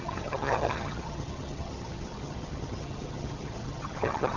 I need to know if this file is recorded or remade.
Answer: remade